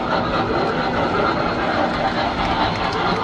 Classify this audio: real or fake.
real